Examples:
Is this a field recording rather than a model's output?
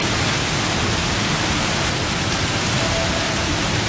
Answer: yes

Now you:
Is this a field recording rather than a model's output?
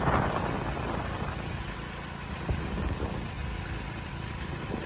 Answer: yes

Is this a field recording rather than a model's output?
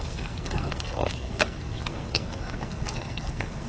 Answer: no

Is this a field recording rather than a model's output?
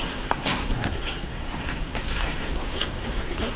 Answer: no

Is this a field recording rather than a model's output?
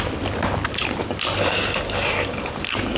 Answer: yes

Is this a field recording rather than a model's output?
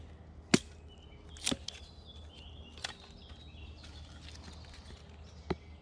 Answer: yes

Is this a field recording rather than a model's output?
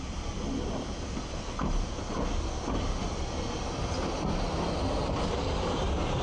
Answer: yes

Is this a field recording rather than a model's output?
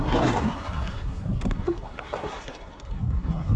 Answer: no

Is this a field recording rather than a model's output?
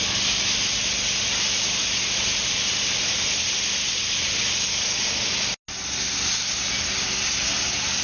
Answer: yes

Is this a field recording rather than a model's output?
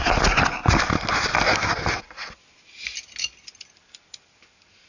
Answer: yes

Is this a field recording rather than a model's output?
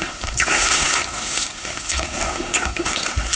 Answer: no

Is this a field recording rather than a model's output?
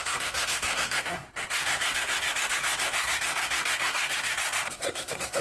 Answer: no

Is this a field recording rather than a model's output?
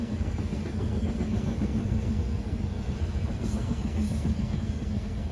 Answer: no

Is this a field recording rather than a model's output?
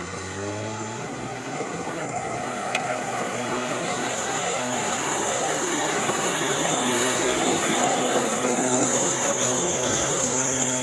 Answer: no